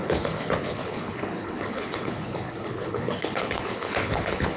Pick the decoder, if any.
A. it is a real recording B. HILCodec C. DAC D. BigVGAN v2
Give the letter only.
B